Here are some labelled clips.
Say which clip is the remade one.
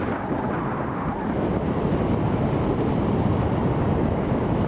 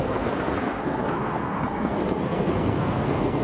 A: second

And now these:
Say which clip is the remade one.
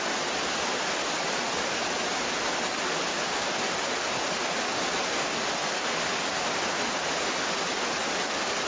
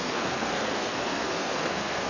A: second